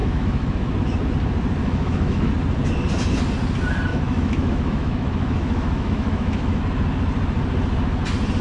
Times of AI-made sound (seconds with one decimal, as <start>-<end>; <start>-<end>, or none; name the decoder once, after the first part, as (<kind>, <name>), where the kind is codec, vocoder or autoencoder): 0.0-0.7 (autoencoder, DAC-VAE); 1.6-2.3; 3.9-6.6